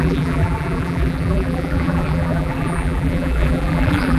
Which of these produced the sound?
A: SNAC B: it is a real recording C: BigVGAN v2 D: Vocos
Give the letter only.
C